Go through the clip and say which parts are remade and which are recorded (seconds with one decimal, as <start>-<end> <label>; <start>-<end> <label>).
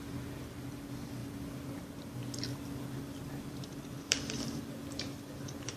0.0-5.8 remade